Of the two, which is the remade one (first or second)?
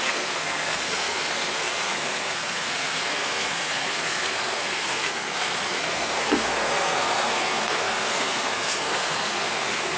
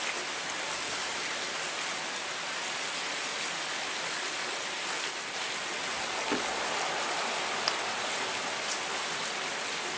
first